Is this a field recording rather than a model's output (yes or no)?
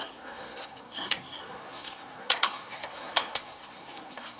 no